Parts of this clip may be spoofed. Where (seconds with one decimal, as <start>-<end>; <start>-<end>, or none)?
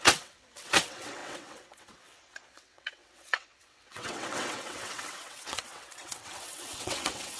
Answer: 0.0-7.4